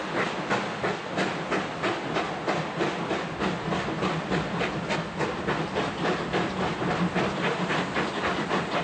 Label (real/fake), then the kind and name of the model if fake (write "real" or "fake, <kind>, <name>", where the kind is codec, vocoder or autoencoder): real